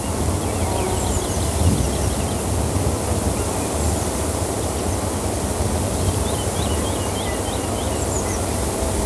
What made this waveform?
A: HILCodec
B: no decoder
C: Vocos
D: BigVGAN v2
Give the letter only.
B